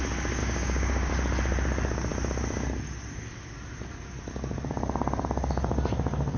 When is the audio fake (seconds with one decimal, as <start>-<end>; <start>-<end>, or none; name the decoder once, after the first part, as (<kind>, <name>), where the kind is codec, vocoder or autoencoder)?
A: 0.4-1.1 (codec, DAC)